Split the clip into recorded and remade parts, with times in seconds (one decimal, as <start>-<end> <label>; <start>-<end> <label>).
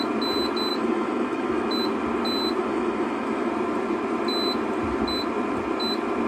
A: 0.0-0.7 recorded; 0.7-1.7 remade; 1.7-2.6 recorded; 2.6-3.5 remade; 3.5-6.3 recorded